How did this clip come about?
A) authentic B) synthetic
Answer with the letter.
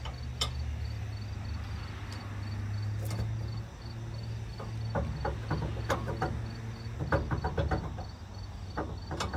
A